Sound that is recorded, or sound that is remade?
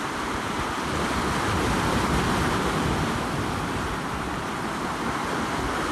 recorded